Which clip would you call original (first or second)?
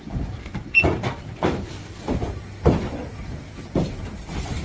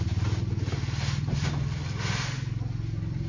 second